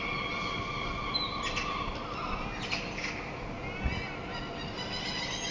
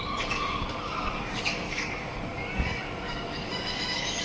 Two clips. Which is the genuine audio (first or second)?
first